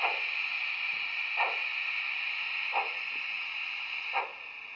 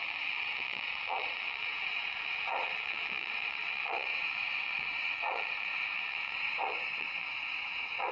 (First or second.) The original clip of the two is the first